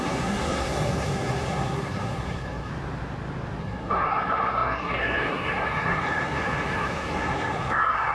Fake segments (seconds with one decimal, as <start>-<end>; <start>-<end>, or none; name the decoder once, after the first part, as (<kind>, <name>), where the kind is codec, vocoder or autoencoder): 0.0-2.7 (codec, SNAC); 3.6-8.1